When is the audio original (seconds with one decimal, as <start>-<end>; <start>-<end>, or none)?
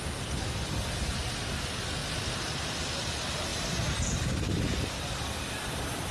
0.0-2.0; 3.1-6.1